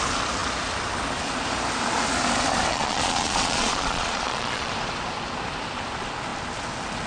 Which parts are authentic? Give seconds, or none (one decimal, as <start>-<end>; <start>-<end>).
0.0-2.7; 4.7-7.1